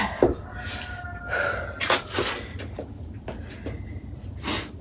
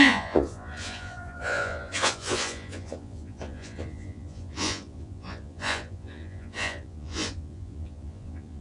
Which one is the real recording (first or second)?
first